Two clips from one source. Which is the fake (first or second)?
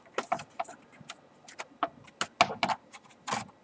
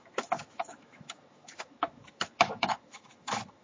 second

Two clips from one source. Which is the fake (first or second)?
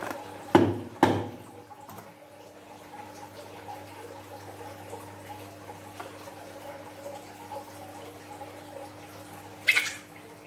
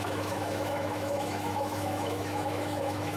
second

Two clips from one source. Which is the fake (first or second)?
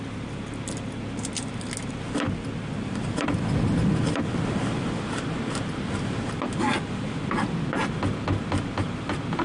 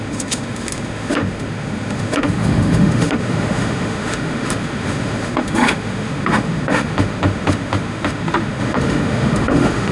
second